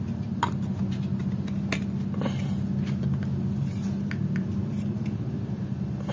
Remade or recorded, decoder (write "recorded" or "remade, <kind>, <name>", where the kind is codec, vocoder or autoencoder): recorded